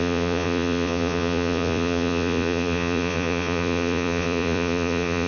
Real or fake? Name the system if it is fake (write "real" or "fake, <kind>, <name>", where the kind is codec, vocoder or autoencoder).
fake, vocoder, Vocos